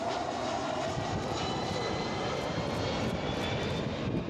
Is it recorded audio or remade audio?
recorded